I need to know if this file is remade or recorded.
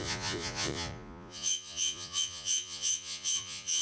remade